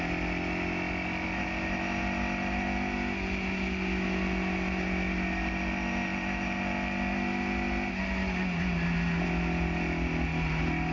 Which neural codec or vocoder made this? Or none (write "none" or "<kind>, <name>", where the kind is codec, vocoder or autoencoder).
none